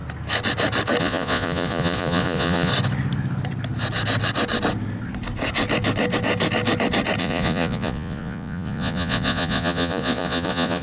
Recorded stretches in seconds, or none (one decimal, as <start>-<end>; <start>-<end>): 0.0-1.0; 2.7-7.2